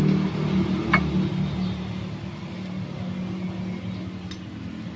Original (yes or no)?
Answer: yes